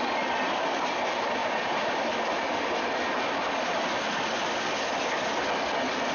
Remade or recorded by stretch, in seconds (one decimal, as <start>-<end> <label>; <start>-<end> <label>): 0.0-6.1 recorded